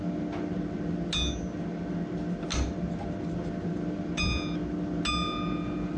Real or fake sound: real